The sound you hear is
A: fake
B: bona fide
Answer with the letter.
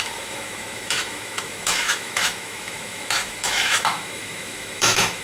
A